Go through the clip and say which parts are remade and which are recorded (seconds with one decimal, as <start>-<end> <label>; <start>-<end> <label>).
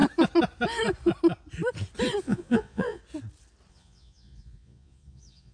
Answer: 0.0-2.2 recorded; 2.2-3.0 remade; 3.0-3.7 recorded; 3.7-5.5 remade